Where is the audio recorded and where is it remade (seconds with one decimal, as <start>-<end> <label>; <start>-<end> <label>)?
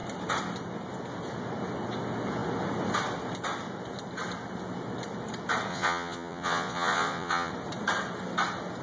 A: 0.0-5.7 recorded; 5.7-7.5 remade; 7.5-8.8 recorded